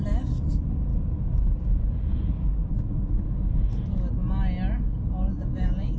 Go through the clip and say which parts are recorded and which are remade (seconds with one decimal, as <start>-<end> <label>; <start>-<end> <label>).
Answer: 0.0-6.0 recorded